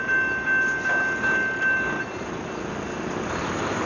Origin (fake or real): real